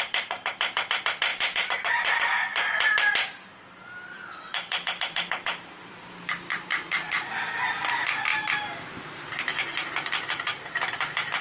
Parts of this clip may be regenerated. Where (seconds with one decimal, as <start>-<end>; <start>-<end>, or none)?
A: 1.3-2.7; 4.5-7.2